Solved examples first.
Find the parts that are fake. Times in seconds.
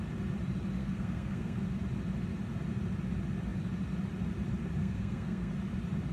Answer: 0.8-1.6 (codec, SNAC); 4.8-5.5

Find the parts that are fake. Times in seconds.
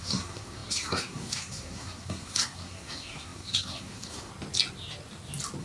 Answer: 0.0-4.3 (codec, SNAC)